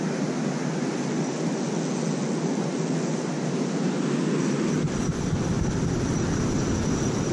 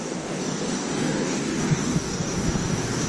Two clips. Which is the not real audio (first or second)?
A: second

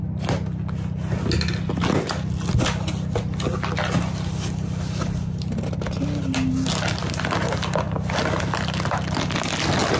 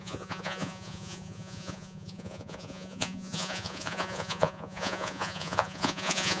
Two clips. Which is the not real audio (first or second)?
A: second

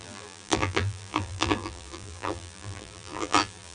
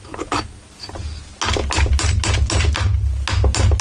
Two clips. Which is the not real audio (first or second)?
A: first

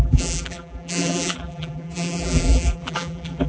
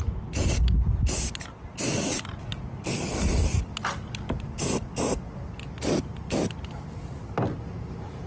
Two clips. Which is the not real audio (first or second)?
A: first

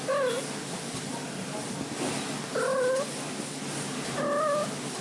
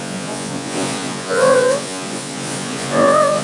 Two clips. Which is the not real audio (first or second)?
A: second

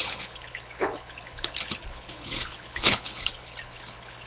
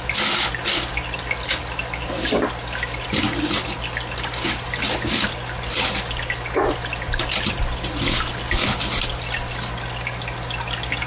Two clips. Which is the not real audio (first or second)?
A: first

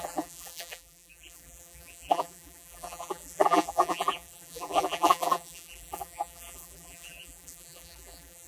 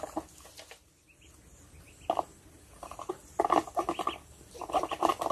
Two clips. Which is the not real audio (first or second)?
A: first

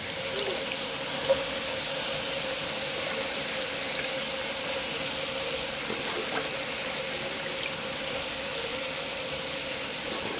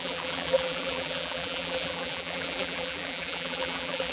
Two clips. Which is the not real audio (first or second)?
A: second